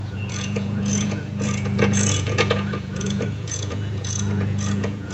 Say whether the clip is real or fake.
fake